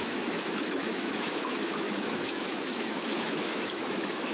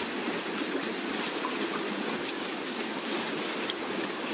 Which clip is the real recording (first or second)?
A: second